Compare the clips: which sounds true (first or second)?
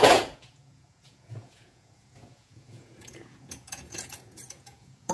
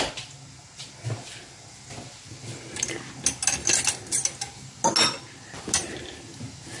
second